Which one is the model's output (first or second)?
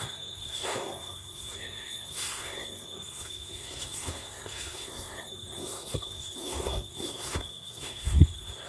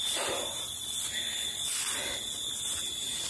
first